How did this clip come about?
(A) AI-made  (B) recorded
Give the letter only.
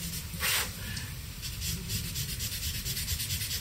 B